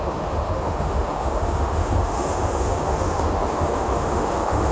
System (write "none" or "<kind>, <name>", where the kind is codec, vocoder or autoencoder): autoencoder, DAC-VAE